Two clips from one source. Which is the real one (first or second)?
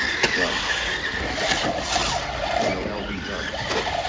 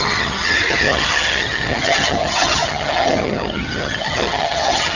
first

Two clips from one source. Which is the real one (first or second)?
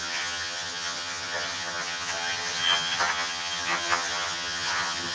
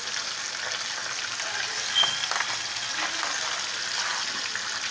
second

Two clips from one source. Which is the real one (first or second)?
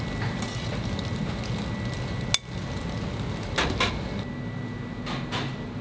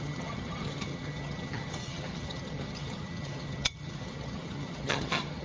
first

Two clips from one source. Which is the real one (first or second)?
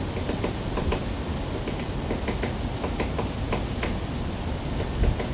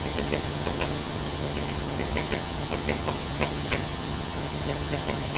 first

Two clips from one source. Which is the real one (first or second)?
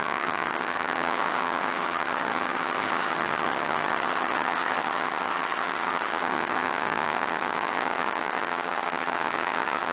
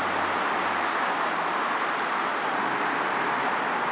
second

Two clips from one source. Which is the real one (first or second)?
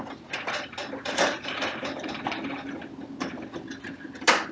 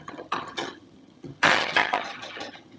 first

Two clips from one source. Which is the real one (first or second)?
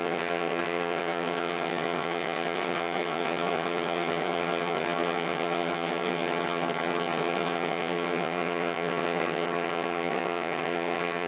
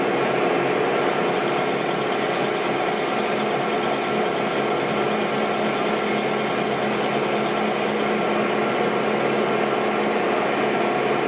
second